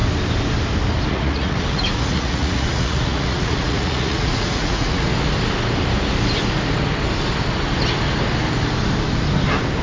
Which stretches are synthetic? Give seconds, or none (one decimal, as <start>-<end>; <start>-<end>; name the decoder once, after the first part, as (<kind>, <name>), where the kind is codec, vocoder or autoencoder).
1.1-5.1 (vocoder, Vocos)